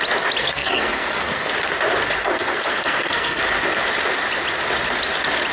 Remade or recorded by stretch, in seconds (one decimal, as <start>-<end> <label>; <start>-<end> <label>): 0.0-0.4 recorded; 0.4-1.5 remade; 1.5-2.2 recorded; 2.2-3.4 remade; 3.4-5.5 recorded